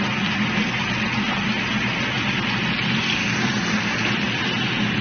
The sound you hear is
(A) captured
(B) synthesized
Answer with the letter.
A